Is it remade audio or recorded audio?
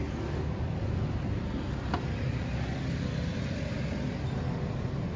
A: recorded